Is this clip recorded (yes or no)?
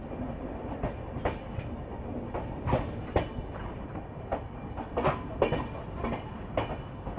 yes